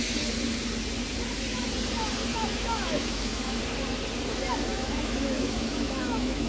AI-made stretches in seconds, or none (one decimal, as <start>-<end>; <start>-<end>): 2.3-3.6; 4.7-6.5